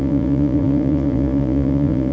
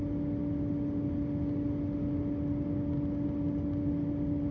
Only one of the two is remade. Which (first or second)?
first